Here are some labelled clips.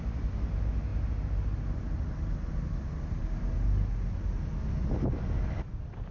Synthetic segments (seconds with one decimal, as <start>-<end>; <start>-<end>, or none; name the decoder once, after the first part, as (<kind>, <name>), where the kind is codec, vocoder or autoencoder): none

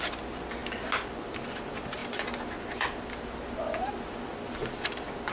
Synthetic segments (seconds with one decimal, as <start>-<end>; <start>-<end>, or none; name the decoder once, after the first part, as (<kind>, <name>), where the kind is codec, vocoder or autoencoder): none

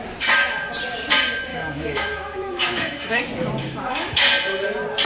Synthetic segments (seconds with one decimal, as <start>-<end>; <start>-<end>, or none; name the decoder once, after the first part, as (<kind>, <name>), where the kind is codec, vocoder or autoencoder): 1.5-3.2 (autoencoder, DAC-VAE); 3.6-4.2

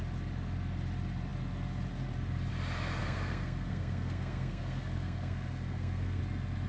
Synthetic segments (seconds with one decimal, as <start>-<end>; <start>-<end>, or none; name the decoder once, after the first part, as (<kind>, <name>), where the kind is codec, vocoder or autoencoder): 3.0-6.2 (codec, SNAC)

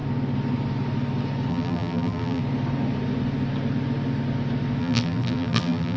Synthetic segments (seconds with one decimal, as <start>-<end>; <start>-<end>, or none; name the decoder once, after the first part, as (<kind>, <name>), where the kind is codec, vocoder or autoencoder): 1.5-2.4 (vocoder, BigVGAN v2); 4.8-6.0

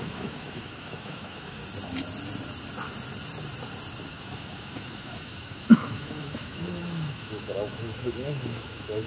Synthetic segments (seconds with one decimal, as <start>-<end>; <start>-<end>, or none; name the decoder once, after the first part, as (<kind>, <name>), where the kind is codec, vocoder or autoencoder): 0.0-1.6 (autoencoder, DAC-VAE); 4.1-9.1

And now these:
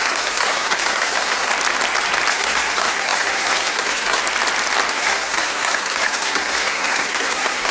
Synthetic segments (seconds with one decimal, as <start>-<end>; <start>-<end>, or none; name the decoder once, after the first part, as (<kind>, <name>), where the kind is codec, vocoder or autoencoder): 0.0-1.5 (codec, SNAC); 2.3-4.2; 4.9-7.7